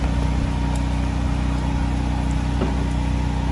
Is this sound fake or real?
real